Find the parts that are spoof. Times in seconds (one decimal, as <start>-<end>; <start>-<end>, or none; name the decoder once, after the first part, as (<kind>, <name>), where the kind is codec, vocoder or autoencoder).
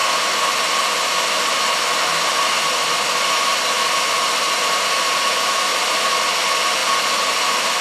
none